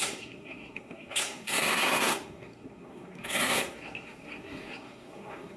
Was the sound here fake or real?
fake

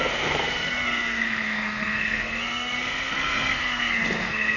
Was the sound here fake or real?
fake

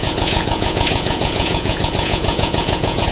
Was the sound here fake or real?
fake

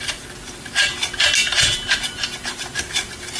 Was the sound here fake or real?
real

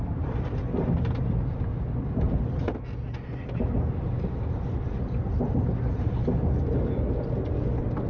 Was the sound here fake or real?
real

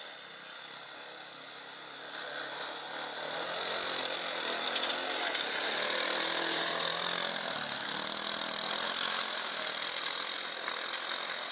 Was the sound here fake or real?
real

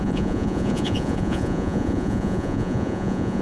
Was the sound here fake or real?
fake